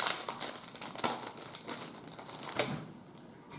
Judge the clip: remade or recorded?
recorded